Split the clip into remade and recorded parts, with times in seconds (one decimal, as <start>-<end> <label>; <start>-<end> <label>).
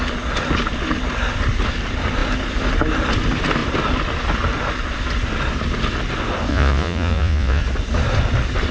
0.0-6.5 recorded; 6.5-7.6 remade; 7.6-8.7 recorded